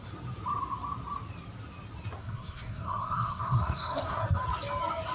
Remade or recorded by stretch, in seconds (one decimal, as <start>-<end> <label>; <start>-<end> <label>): 0.0-2.2 recorded; 2.2-4.2 remade; 4.2-5.1 recorded